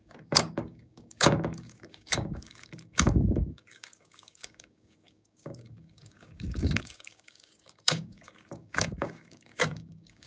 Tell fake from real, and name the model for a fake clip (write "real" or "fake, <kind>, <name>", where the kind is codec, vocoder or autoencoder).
fake, codec, DAC